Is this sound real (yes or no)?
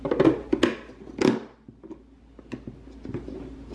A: yes